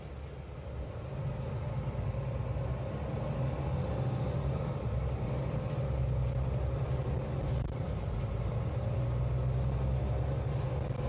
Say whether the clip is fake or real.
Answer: real